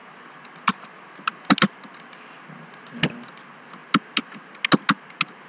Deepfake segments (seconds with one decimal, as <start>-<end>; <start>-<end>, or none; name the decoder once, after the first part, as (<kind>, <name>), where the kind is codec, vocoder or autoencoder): none